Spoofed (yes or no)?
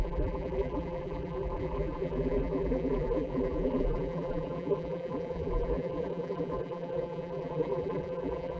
yes